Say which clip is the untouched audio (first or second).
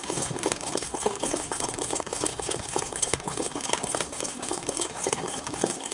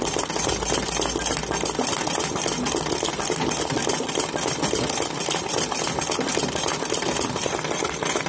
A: second